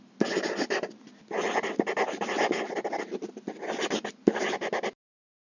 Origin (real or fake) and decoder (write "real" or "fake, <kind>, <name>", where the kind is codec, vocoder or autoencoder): real